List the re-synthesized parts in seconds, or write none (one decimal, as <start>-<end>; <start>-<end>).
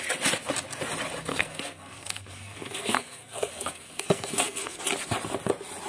1.3-4.8